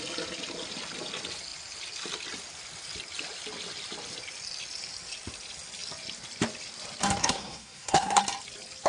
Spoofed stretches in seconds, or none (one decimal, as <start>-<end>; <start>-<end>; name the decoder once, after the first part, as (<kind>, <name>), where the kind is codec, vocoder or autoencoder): 7.2-8.2 (codec, SNAC)